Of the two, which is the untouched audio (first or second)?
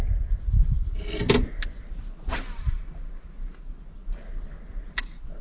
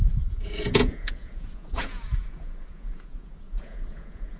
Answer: first